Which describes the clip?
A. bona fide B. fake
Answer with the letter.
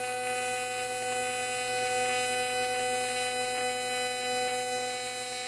A